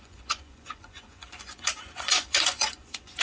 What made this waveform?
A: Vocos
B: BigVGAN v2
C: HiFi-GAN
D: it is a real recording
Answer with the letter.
A